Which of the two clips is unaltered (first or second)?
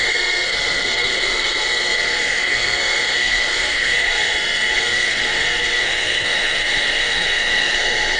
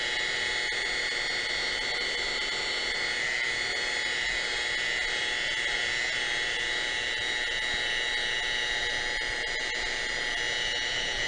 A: second